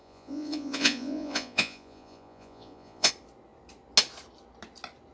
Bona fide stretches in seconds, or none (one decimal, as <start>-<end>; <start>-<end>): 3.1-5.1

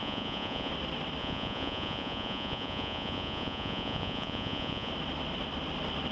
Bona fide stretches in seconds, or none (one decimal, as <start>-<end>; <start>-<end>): 0.7-1.2; 4.9-6.1

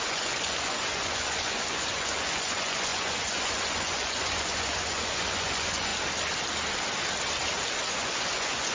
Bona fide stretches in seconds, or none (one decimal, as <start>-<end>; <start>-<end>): 5.9-7.9

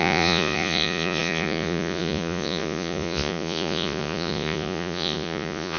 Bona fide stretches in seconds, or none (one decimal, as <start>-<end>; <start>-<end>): none